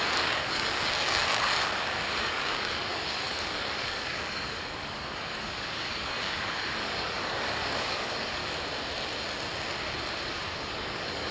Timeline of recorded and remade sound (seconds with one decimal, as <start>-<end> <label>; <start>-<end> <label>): 0.0-8.4 remade; 8.4-10.3 recorded; 10.3-11.3 remade